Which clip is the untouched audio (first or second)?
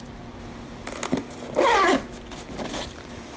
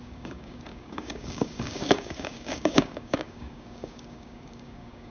first